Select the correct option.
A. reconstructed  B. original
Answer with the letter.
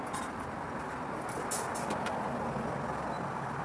B